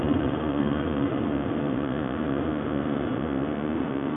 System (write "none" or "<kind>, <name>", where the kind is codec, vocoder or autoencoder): vocoder, Vocos